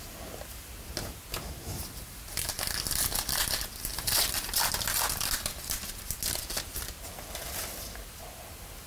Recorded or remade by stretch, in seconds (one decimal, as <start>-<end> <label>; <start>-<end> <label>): 0.0-3.9 recorded; 3.9-4.7 remade; 4.7-8.9 recorded